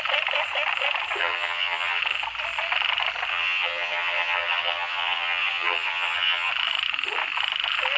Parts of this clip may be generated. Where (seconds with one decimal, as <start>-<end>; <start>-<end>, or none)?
1.2-2.0; 3.3-6.5